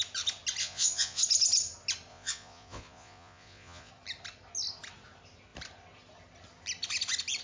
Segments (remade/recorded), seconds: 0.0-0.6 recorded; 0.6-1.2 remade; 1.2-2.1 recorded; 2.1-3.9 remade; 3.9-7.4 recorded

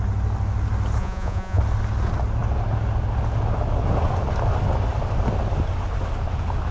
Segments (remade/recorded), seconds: 0.0-1.0 recorded; 1.0-1.6 remade; 1.6-6.7 recorded

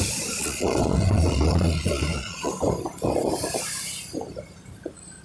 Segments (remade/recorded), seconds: 0.0-0.4 recorded; 0.4-2.5 remade; 2.5-5.2 recorded

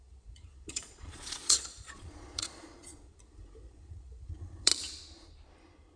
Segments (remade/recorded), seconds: 0.0-4.7 remade; 4.7-6.0 recorded

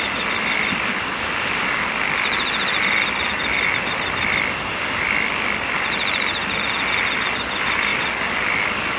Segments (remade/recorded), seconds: 0.0-9.0 recorded

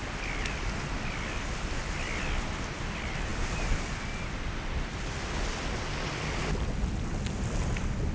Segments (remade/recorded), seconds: 0.0-8.1 recorded

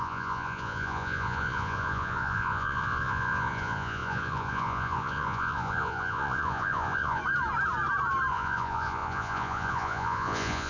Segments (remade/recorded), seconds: 0.0-7.2 remade; 7.2-8.3 recorded; 8.3-10.7 remade